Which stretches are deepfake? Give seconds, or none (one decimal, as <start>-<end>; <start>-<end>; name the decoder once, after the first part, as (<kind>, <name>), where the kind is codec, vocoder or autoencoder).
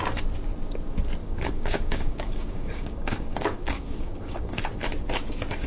1.2-4.6 (codec, DAC)